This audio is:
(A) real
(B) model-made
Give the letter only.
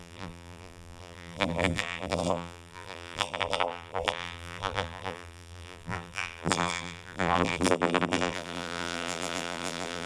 B